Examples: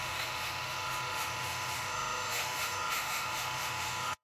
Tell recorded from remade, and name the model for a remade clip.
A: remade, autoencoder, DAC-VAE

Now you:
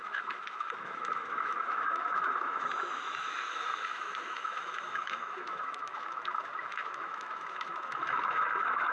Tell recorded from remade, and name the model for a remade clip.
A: remade, autoencoder, DAC-VAE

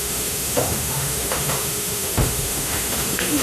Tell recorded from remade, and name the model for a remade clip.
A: remade, autoencoder, DAC-VAE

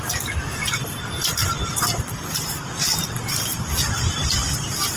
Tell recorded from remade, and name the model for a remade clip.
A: recorded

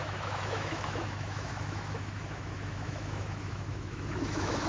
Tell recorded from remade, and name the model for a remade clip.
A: remade, autoencoder, DAC-VAE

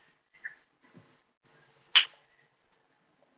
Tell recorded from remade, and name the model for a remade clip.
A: recorded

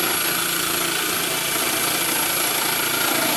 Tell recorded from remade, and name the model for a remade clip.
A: recorded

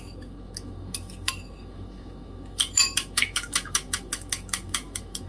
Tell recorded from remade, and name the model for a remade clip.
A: remade, autoencoder, DAC-VAE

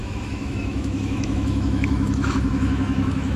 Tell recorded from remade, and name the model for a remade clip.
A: remade, autoencoder, DAC-VAE